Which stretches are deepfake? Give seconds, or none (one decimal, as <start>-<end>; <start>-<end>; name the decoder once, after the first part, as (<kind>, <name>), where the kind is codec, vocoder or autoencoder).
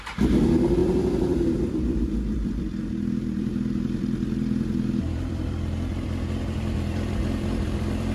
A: 0.0-8.1 (vocoder, BigVGAN v2)